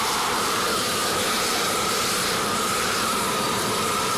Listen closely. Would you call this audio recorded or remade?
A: remade